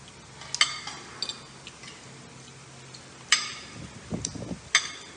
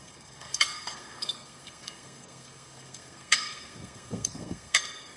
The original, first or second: first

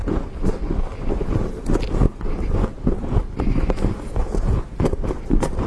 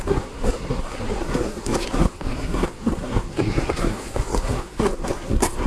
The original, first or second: first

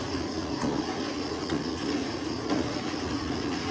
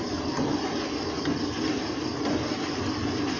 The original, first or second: second